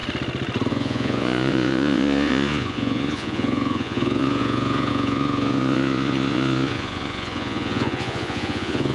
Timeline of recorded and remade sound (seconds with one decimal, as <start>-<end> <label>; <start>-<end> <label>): 0.0-0.7 recorded; 0.7-8.9 remade